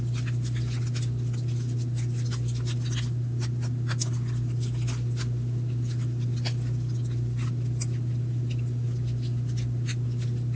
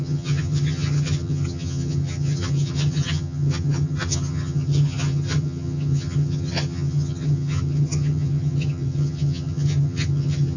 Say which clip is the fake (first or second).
second